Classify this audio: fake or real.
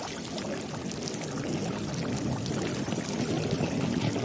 real